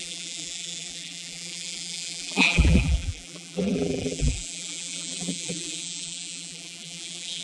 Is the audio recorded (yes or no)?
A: no